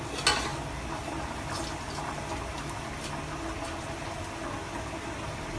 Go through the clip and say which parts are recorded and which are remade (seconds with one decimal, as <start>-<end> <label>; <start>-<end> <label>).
0.0-5.6 recorded